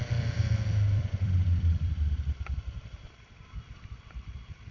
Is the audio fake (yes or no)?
yes